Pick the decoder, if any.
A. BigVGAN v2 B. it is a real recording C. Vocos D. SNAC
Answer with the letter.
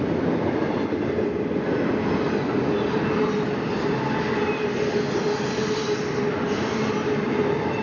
B